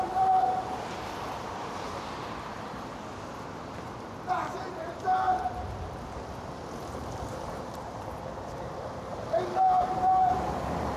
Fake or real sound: fake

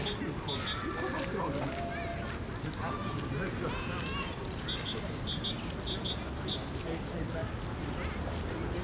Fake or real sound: real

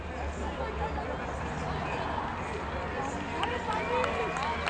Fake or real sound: real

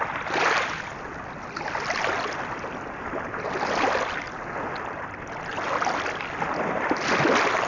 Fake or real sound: real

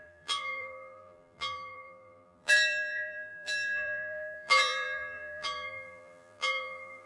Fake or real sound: fake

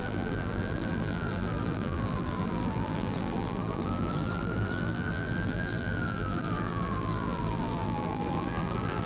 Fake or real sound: fake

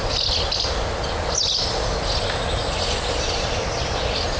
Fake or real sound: real